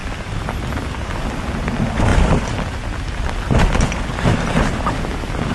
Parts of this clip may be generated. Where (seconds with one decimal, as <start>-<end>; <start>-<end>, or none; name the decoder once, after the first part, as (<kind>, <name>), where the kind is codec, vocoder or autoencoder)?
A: none